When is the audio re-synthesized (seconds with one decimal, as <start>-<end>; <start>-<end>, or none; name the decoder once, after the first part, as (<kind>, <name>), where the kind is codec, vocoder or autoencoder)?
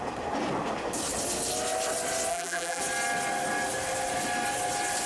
2.3-2.8 (vocoder, BigVGAN v2)